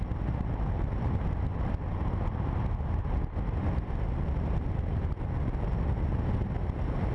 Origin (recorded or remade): recorded